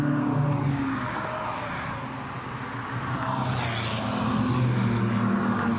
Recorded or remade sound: recorded